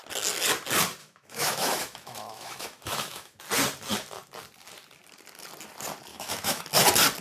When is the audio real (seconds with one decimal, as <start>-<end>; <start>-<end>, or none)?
0.0-1.0; 3.4-6.1; 6.6-7.2